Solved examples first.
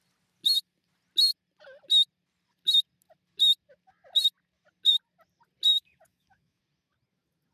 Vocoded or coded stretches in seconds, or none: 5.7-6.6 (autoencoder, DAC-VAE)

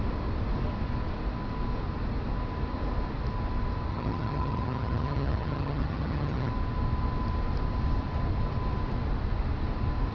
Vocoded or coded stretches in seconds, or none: 3.9-6.5 (vocoder, HiFi-GAN)